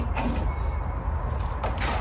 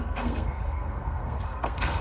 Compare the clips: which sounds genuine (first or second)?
first